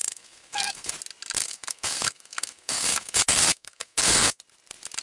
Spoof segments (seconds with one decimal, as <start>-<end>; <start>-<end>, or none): 0.0-0.9; 1.4-4.4